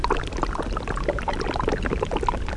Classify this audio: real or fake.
real